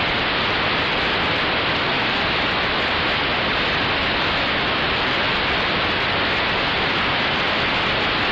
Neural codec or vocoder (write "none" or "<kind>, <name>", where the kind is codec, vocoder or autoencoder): none